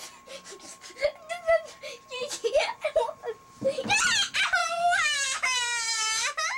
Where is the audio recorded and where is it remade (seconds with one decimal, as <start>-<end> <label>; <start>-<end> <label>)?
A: 0.0-4.6 recorded; 4.6-6.6 remade